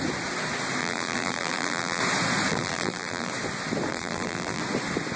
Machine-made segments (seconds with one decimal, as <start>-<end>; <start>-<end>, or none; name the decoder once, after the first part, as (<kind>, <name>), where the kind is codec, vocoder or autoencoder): 0.8-2.0 (vocoder, BigVGAN v2); 2.5-3.3; 3.9-4.6